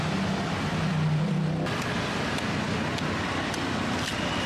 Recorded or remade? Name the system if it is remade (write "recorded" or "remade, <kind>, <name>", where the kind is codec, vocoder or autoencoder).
recorded